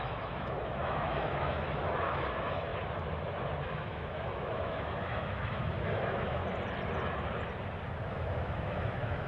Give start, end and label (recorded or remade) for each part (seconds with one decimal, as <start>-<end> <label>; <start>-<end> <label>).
0.0-2.7 remade; 2.7-3.6 recorded; 3.6-6.4 remade; 6.4-8.1 recorded; 8.1-9.3 remade